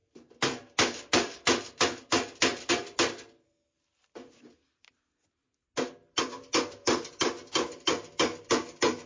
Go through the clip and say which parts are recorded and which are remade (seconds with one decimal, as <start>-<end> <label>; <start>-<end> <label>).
0.0-9.1 recorded